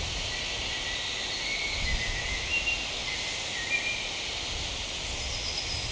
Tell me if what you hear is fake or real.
real